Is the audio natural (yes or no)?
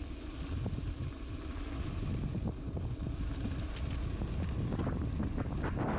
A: yes